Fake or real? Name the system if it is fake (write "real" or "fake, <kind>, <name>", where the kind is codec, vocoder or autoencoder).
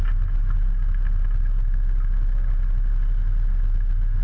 real